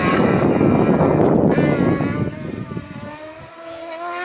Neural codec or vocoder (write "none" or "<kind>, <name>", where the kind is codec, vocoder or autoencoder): none